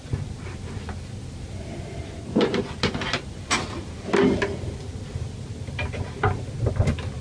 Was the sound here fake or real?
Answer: real